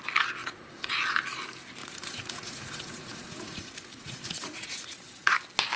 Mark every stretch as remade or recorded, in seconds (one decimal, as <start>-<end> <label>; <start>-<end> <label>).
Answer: 0.0-0.4 recorded; 0.4-0.9 remade; 0.9-1.8 recorded; 1.8-5.3 remade; 5.3-5.8 recorded